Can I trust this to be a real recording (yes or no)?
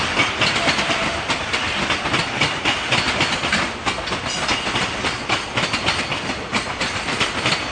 yes